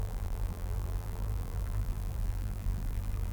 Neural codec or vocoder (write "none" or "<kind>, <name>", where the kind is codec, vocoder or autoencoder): vocoder, BigVGAN v2